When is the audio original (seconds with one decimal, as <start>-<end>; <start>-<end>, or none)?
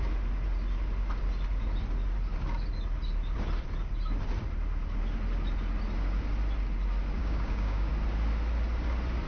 0.0-7.2; 7.9-9.3